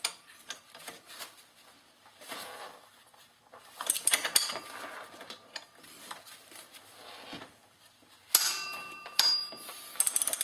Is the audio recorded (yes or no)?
no